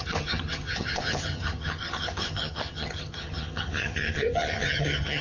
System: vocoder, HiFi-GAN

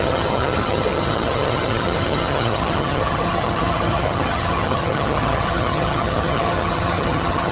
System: vocoder, HiFi-GAN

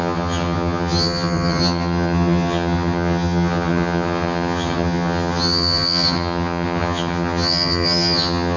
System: vocoder, HiFi-GAN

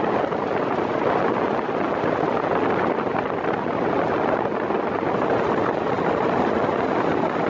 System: none